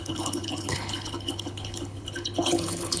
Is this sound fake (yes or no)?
yes